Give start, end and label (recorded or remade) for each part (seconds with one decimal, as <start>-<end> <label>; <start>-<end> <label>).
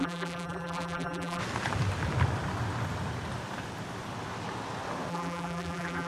0.0-1.4 remade; 1.4-5.1 recorded; 5.1-6.1 remade